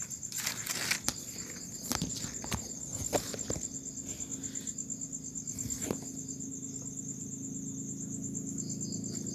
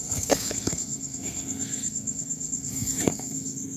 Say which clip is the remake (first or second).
second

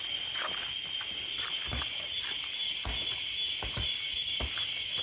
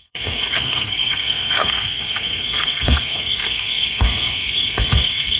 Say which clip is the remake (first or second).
second